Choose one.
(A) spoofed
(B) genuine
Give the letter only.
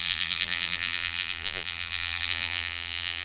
A